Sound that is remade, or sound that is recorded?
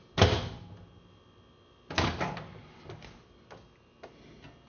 recorded